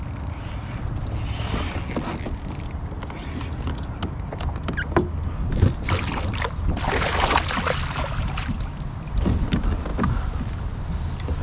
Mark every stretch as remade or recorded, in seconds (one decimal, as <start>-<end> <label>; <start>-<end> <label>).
0.0-11.4 recorded